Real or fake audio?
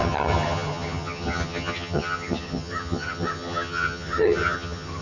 fake